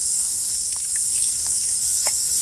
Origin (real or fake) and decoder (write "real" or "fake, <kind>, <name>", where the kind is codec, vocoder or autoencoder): fake, codec, SNAC